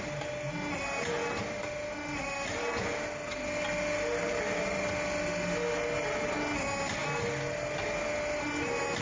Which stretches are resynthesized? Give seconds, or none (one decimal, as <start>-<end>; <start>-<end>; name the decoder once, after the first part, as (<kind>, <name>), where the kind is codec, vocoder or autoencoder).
none